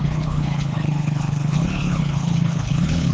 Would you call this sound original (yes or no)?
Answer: no